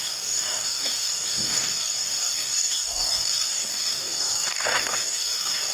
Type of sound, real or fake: fake